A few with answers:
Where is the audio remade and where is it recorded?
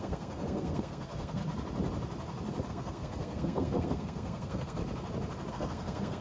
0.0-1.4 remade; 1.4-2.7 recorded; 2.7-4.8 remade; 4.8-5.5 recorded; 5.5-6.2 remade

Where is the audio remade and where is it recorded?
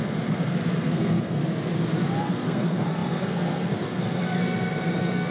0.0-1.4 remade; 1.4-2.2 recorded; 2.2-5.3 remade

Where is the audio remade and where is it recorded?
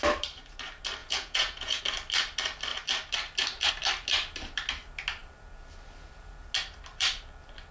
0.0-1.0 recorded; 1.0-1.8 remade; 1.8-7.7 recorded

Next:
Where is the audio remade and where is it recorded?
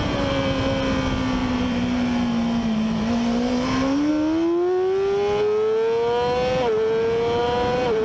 0.0-1.4 recorded; 1.4-4.1 remade; 4.1-8.0 recorded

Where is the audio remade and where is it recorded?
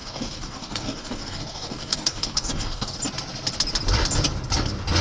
0.0-3.0 remade; 3.0-5.0 recorded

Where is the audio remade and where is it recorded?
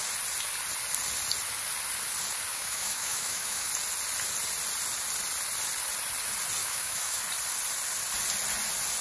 0.0-2.5 recorded; 2.5-3.7 remade; 3.7-6.6 recorded; 6.6-7.2 remade; 7.2-9.0 recorded